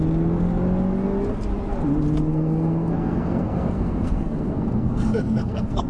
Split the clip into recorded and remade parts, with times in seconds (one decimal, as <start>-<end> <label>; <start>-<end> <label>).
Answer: 0.0-2.3 recorded; 2.3-5.9 remade